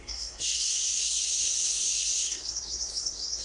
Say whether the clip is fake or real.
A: fake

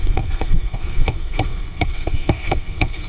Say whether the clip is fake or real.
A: fake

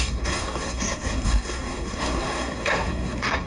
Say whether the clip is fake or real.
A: fake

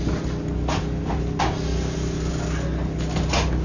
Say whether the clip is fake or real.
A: real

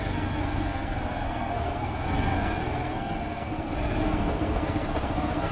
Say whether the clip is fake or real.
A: fake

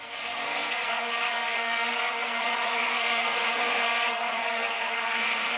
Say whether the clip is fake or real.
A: fake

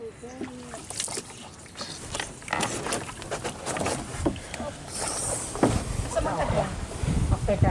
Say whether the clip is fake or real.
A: real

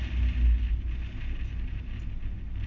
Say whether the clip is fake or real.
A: real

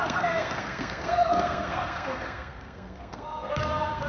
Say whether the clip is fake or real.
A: fake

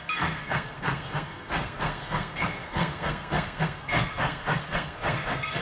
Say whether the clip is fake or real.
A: fake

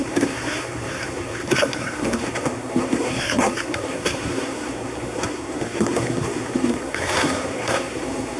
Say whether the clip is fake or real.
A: fake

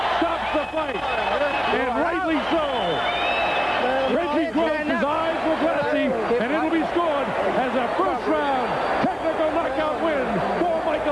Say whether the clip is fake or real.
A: real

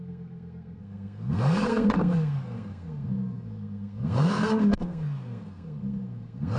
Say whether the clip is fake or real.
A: fake